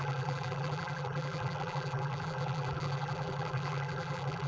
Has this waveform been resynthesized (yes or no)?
yes